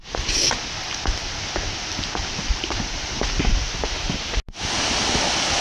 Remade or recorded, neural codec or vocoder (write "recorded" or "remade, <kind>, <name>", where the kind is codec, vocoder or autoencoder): recorded